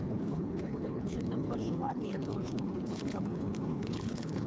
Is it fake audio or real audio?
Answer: fake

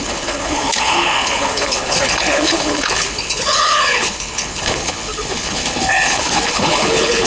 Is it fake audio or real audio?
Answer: fake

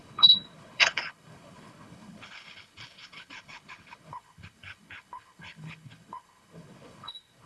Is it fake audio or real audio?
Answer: fake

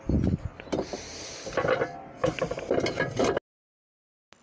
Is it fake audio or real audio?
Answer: real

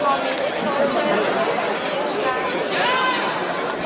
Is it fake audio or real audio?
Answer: real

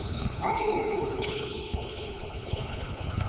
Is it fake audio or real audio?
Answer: fake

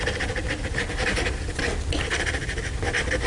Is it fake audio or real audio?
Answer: real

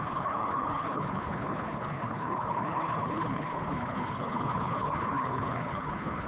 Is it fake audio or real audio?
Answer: fake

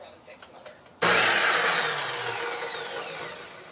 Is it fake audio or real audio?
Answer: real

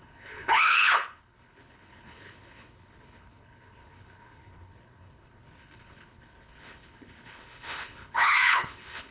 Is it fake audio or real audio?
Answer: fake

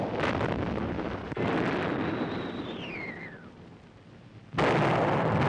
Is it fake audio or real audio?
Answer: real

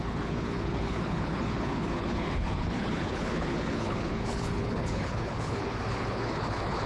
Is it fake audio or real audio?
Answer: fake